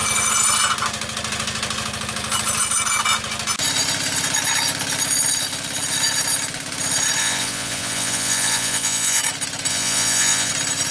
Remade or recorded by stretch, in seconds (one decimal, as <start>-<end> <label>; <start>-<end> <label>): 0.0-7.2 recorded; 7.2-9.2 remade; 9.2-9.7 recorded; 9.7-10.5 remade; 10.5-10.9 recorded